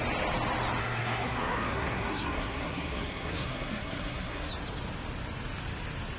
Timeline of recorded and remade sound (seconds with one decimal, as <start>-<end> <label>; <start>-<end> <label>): 0.0-0.8 recorded; 0.8-4.5 remade; 4.5-6.2 recorded